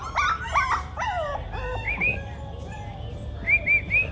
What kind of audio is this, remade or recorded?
recorded